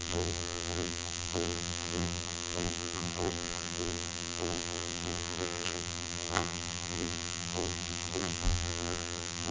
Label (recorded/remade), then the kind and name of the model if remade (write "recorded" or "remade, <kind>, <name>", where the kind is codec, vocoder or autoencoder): remade, vocoder, BigVGAN v2